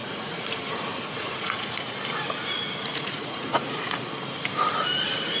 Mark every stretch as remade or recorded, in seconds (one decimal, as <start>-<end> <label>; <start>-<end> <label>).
0.0-1.9 remade; 1.9-2.9 recorded; 2.9-4.1 remade; 4.1-5.4 recorded